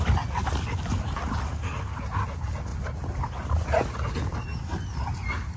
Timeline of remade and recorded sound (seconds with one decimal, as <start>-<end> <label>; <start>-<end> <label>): 0.0-5.6 recorded

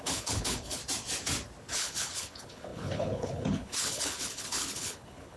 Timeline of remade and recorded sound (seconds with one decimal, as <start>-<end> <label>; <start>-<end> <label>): 0.0-0.8 remade; 0.8-1.7 recorded; 1.7-5.4 remade

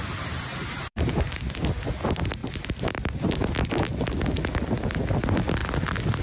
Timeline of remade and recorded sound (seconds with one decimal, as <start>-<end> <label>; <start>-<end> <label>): 0.0-0.5 recorded; 0.5-1.1 remade; 1.1-2.4 recorded; 2.4-3.5 remade; 3.5-6.2 recorded

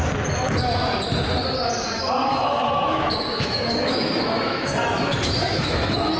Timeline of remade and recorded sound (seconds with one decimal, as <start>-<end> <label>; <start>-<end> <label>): 0.0-2.3 recorded; 2.3-6.2 remade